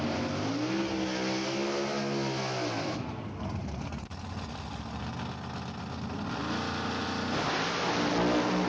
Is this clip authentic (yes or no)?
yes